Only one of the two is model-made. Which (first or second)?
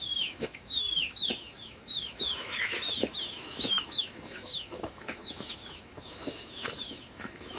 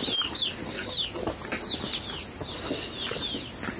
first